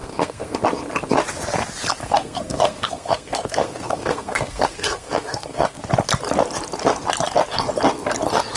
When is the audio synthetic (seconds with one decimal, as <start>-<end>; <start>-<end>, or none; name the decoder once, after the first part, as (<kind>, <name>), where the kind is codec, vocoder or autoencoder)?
0.0-0.6 (codec, SNAC); 2.0-5.8

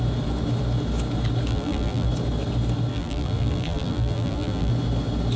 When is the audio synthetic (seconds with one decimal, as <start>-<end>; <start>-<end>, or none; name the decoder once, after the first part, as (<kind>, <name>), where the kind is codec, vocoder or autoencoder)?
1.5-2.1 (vocoder, BigVGAN v2); 2.9-4.7